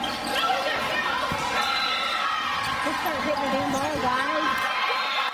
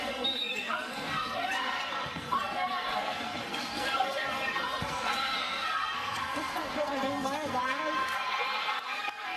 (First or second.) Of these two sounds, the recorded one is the first